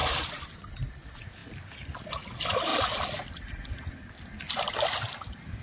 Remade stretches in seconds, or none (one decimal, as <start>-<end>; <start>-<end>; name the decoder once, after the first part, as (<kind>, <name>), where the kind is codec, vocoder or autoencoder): none